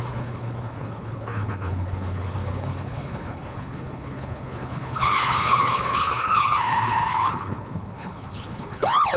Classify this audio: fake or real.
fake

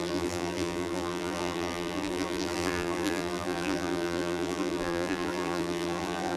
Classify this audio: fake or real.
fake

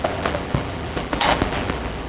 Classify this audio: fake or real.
fake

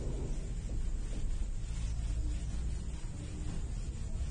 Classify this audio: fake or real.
real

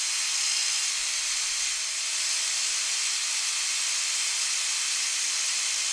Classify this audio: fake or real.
real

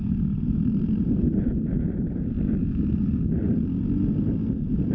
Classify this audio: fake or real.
real